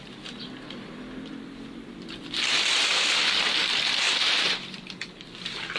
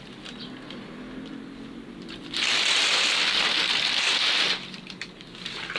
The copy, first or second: first